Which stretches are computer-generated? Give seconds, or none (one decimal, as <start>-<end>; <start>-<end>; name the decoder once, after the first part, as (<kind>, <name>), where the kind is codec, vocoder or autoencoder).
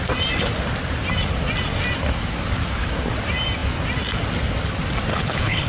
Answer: 5.1-5.7 (codec, HILCodec)